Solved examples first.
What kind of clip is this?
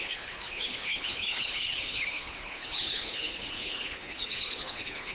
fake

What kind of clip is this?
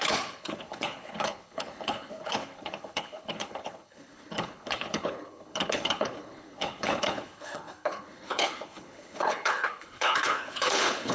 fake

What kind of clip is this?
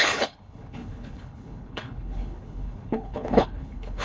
fake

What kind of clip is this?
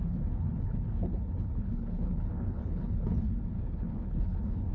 fake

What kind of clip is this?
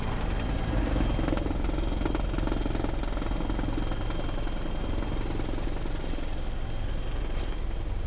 real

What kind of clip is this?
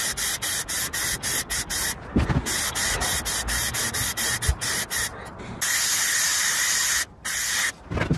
real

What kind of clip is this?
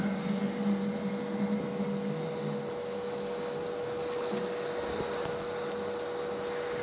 real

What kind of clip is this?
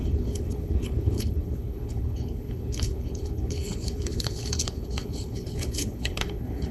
fake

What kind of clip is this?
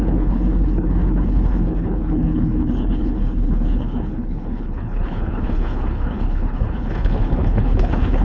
fake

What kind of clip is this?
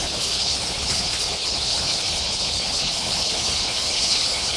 fake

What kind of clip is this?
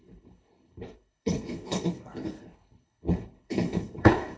fake